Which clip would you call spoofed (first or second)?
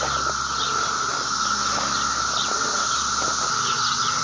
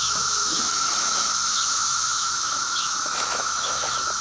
second